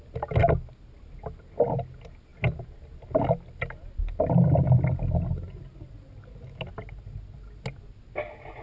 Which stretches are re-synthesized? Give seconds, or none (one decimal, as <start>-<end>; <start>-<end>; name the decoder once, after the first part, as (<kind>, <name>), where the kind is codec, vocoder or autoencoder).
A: none